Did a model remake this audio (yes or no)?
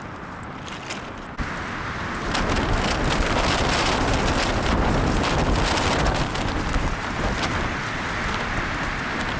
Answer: no